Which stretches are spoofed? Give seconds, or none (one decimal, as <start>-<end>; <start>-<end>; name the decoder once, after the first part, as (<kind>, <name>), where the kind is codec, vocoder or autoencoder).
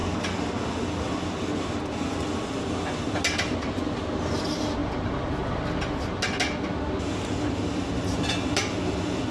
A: none